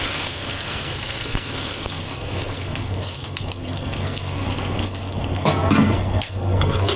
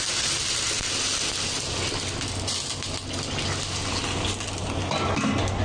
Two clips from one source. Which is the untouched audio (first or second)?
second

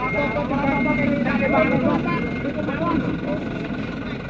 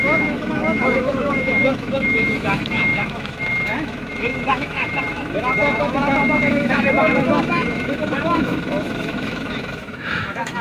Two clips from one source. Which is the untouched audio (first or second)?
first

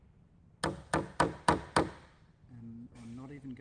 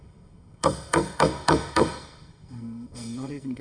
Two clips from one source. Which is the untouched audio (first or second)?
first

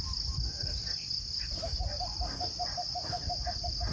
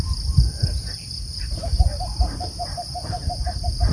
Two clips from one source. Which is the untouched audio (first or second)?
first